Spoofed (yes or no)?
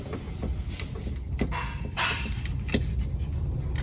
no